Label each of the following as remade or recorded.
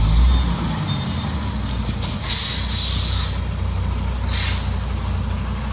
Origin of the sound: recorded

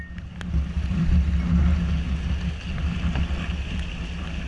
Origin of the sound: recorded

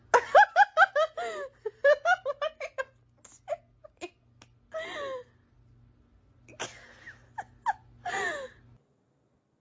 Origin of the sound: recorded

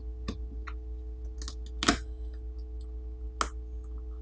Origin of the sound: recorded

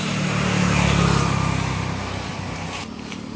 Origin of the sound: recorded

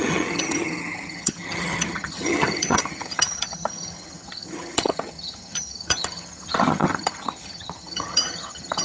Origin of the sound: remade